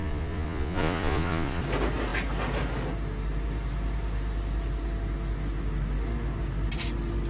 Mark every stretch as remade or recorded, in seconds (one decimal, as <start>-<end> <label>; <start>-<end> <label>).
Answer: 0.0-1.6 remade; 1.6-7.3 recorded